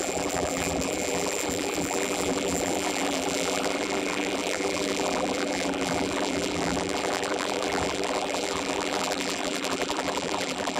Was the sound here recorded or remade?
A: remade